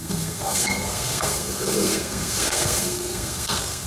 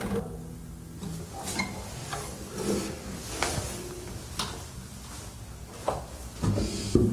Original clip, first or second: second